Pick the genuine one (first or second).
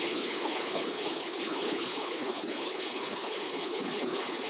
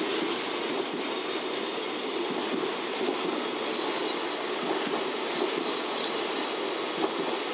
second